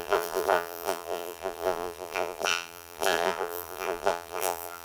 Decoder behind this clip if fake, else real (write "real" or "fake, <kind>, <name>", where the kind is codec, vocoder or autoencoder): fake, vocoder, BigVGAN v2